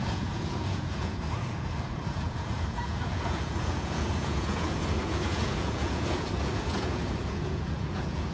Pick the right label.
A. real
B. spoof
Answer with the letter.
B